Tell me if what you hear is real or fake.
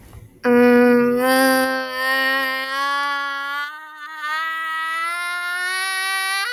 real